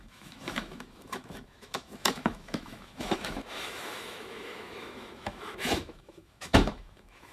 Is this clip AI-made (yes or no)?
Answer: yes